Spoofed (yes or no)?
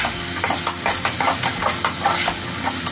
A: no